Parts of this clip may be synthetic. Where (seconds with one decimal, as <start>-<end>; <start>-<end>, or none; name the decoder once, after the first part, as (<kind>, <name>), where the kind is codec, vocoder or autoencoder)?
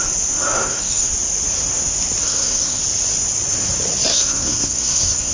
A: 0.5-1.1 (codec, SNAC); 2.2-2.8; 4.1-5.3